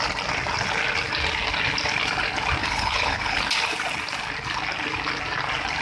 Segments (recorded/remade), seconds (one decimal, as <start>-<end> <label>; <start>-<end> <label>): 0.0-2.6 recorded; 2.6-3.4 remade; 3.4-5.8 recorded